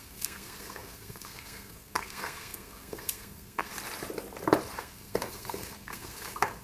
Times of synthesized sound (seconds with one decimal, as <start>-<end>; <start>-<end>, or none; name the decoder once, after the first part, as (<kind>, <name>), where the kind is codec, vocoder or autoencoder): 0.0-3.7 (codec, SNAC); 4.8-6.6

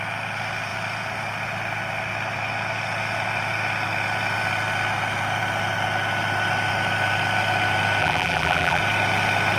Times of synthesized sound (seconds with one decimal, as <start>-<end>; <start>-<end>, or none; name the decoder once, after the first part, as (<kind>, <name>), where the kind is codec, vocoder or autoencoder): 8.0-8.8 (vocoder, BigVGAN v2)